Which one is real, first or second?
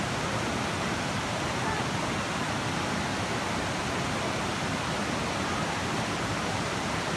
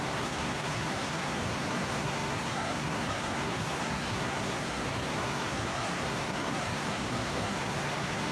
first